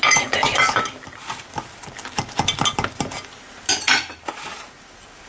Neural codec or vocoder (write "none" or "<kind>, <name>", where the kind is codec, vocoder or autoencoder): none